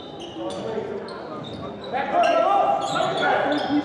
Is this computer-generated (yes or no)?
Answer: no